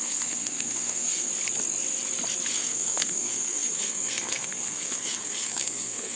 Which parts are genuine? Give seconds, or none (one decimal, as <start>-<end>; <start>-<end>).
1.3-2.5